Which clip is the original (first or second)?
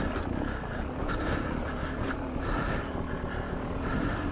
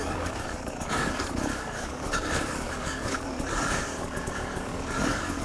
first